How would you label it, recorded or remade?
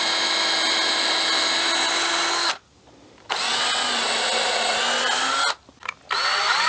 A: recorded